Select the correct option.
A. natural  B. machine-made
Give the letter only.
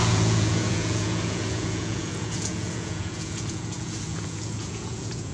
B